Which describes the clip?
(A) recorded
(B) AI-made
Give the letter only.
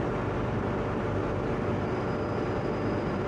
A